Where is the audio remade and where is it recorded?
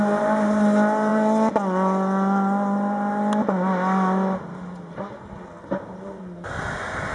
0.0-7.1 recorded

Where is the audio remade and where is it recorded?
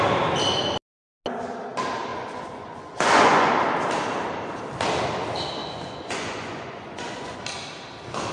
0.0-2.1 recorded; 2.1-3.5 remade; 3.5-5.6 recorded; 5.6-7.4 remade; 7.4-8.3 recorded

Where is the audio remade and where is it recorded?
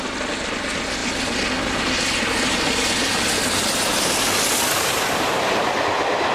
0.0-6.3 recorded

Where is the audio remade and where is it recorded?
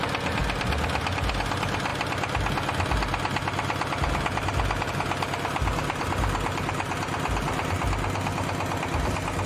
0.0-9.5 recorded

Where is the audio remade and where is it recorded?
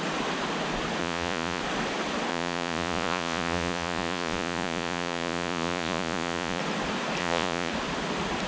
0.0-1.0 recorded; 1.0-1.6 remade; 1.6-2.3 recorded; 2.3-6.6 remade; 6.6-7.2 recorded; 7.2-7.7 remade; 7.7-8.5 recorded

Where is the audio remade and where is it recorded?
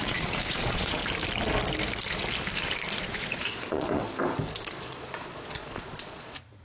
0.0-1.0 remade; 1.0-3.0 recorded; 3.0-4.0 remade; 4.0-4.6 recorded; 4.6-6.6 remade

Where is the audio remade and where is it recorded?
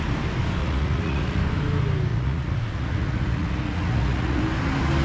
0.0-0.6 recorded; 0.6-1.4 remade; 1.4-2.1 recorded; 2.1-4.4 remade; 4.4-5.0 recorded